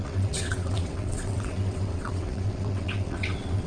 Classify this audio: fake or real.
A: fake